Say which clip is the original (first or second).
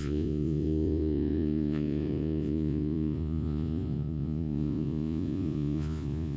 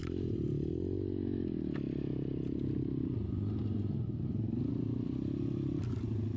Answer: second